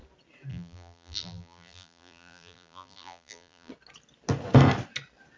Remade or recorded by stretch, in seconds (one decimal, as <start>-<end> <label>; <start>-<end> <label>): 0.0-0.5 recorded; 0.5-3.7 remade; 3.7-5.4 recorded